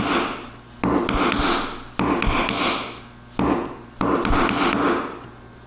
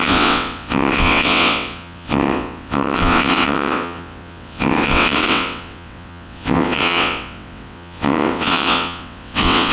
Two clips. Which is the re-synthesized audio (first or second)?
second